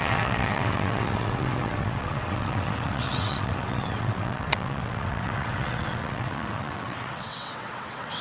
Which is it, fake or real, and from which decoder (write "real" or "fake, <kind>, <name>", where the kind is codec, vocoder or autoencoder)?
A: fake, vocoder, WaveNeXt